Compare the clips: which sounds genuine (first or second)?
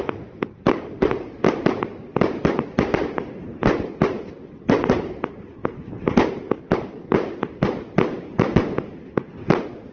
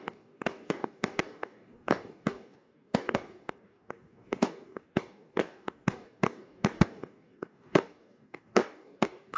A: first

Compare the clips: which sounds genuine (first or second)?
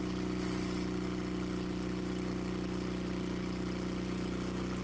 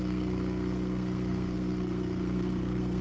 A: first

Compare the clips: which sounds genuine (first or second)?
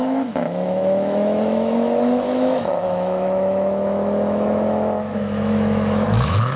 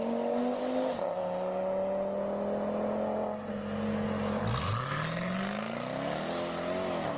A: second